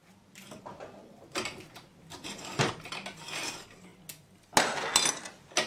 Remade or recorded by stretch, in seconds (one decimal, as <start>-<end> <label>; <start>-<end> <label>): 0.0-5.7 recorded